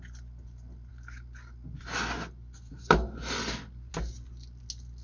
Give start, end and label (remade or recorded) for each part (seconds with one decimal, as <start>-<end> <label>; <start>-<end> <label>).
0.0-5.0 recorded